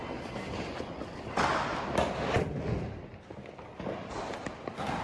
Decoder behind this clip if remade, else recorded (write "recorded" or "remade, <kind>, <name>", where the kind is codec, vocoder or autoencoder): recorded